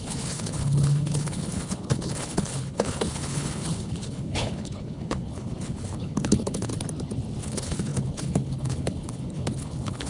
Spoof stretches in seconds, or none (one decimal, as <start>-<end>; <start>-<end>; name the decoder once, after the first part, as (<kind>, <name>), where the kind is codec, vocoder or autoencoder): 0.0-6.7 (codec, HILCodec); 7.4-10.1